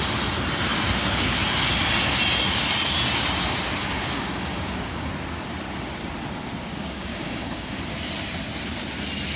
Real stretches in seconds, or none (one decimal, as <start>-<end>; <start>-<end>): 0.0-3.8; 5.1-6.7; 7.8-9.4